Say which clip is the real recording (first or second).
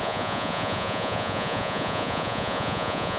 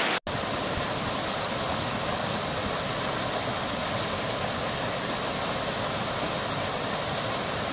second